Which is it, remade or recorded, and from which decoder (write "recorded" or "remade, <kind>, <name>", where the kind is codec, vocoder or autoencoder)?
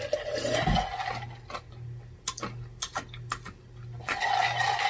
recorded